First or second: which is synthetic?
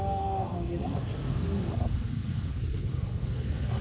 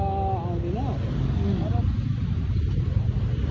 first